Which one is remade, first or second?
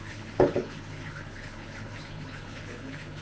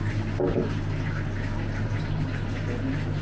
first